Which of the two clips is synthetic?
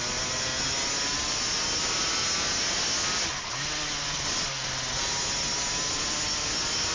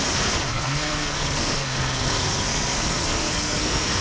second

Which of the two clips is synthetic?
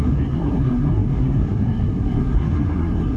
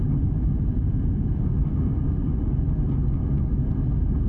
first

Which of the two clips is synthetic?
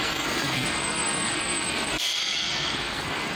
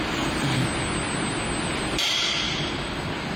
first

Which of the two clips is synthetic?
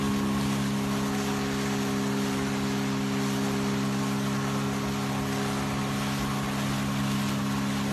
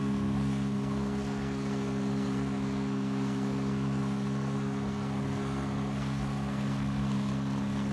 second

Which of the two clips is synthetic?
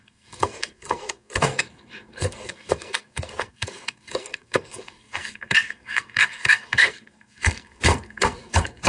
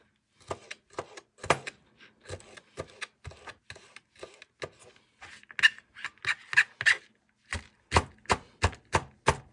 first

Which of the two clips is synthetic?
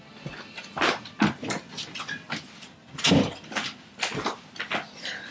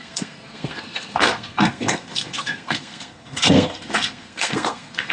second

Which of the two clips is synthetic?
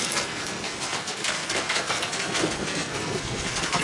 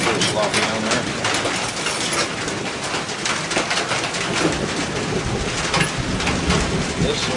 first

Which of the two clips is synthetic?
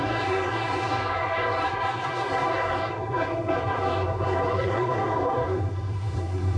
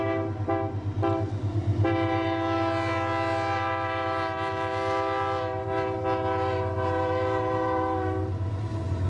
first